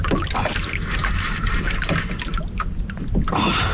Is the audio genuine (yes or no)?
yes